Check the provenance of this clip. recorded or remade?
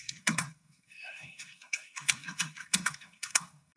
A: remade